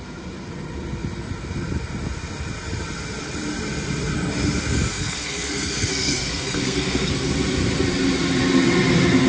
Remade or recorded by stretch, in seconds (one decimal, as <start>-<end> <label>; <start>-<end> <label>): 0.0-4.9 recorded; 4.9-7.1 remade; 7.1-9.3 recorded

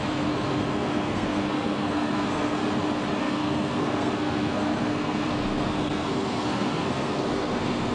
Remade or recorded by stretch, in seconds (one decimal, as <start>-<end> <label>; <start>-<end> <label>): 0.0-2.6 remade; 2.6-3.2 recorded; 3.2-7.9 remade

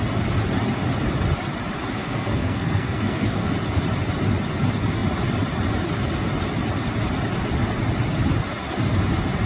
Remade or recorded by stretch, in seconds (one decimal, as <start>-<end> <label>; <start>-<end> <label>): 0.0-2.0 recorded; 2.0-3.5 remade; 3.5-9.5 recorded